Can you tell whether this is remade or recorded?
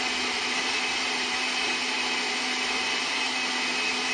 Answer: recorded